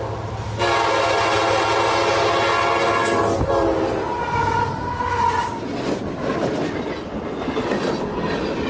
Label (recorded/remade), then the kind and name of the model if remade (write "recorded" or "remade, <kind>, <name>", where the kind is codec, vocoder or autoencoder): recorded